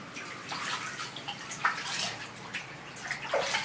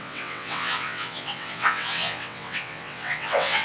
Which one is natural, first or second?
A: first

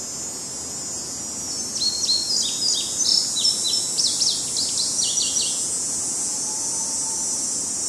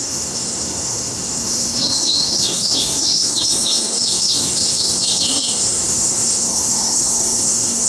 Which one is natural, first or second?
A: first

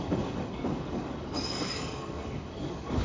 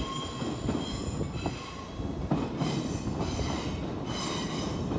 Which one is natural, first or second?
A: second